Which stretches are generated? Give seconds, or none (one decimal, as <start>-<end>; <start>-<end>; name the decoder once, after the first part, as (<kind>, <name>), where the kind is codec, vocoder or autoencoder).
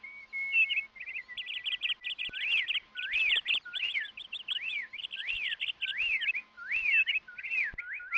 2.9-7.4 (vocoder, BigVGAN v2)